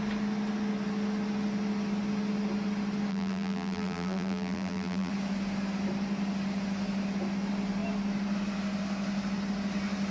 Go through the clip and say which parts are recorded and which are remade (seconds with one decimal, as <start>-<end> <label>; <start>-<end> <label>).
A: 0.0-3.1 recorded; 3.1-5.1 remade; 5.1-10.1 recorded